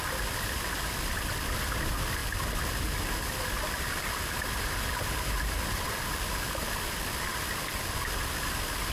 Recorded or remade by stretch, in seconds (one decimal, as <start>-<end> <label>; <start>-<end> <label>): 0.0-8.9 recorded